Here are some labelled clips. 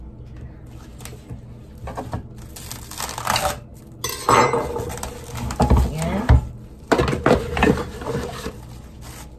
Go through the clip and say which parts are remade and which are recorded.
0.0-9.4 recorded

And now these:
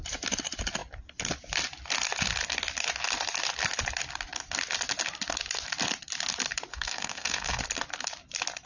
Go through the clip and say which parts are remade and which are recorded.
0.0-6.7 recorded; 6.7-7.6 remade; 7.6-8.7 recorded

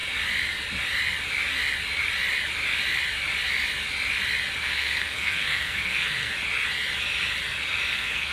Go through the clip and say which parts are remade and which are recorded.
0.0-4.6 recorded; 4.6-6.3 remade; 6.3-7.9 recorded; 7.9-8.3 remade

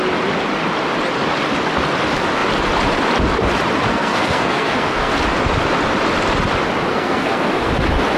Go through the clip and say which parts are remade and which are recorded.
0.0-3.9 recorded; 3.9-5.1 remade; 5.1-6.9 recorded; 6.9-7.7 remade; 7.7-8.2 recorded

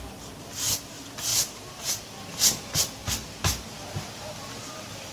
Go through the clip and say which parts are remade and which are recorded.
0.0-5.1 recorded

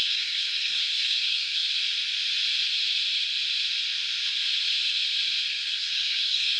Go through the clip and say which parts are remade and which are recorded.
0.0-1.7 remade; 1.7-5.5 recorded; 5.5-6.6 remade

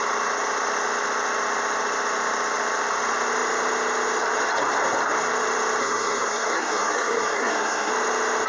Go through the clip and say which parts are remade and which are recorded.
0.0-5.8 recorded; 5.8-7.9 remade; 7.9-8.5 recorded